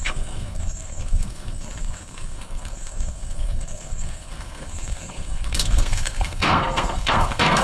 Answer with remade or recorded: remade